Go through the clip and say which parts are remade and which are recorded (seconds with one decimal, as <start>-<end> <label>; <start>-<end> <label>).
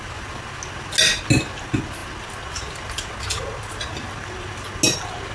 0.0-5.3 recorded